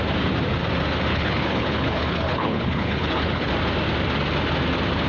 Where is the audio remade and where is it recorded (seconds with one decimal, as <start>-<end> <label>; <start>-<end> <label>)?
0.0-1.1 recorded; 1.1-3.5 remade; 3.5-5.1 recorded